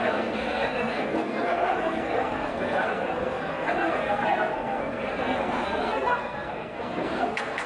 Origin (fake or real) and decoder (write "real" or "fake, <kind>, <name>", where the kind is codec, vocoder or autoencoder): fake, codec, SNAC